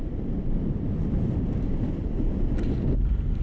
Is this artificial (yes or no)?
no